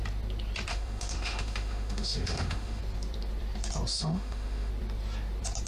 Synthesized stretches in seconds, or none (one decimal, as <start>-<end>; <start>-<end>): 0.7-2.8; 3.9-4.7